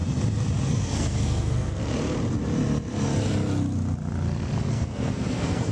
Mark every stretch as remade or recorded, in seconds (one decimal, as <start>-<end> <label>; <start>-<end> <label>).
0.0-0.7 recorded; 0.7-1.8 remade; 1.8-4.7 recorded; 4.7-5.7 remade